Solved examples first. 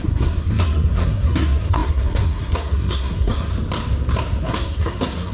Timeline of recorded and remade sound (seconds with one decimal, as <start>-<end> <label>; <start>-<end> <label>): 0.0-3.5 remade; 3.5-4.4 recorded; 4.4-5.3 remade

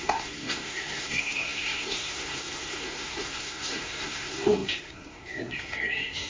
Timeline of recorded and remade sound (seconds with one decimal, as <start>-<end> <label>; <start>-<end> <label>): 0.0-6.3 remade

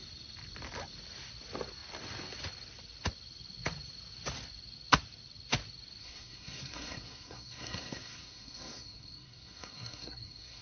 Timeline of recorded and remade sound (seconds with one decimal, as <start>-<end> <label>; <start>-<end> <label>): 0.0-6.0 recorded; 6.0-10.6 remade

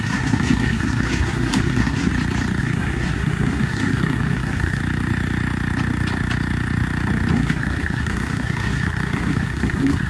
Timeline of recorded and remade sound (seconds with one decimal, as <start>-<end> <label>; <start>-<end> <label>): 0.0-2.1 remade; 2.1-2.6 recorded; 2.6-4.8 remade; 4.8-7.3 recorded; 7.3-10.1 remade

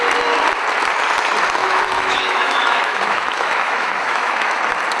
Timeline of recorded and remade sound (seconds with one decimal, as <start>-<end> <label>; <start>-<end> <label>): 0.0-1.6 recorded; 1.6-4.6 remade; 4.6-5.0 recorded

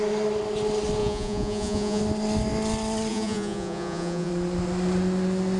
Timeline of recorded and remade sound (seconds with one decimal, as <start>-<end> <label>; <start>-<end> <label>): 0.0-1.0 recorded; 1.0-2.0 remade; 2.0-3.1 recorded; 3.1-4.3 remade; 4.3-5.6 recorded

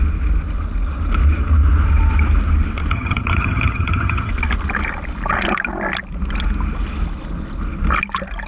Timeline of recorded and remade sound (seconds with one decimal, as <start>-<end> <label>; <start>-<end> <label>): 0.0-2.9 recorded; 2.9-4.3 remade; 4.3-8.5 recorded